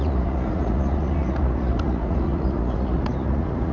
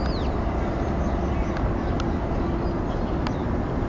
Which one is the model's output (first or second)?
first